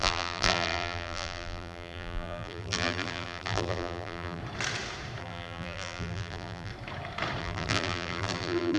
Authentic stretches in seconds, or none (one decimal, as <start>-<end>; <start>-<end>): 4.4-5.2; 6.7-7.4